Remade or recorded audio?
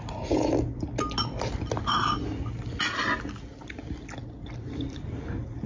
recorded